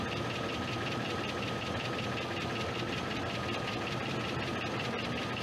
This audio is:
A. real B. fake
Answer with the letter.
A